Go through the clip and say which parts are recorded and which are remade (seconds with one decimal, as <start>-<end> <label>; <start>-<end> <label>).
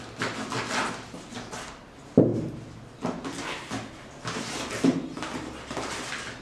0.0-6.4 recorded